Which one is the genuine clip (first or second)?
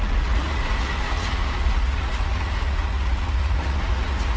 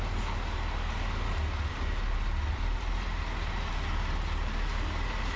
second